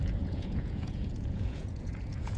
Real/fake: fake